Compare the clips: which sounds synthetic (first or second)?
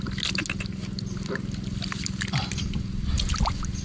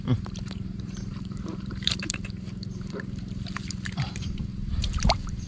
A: second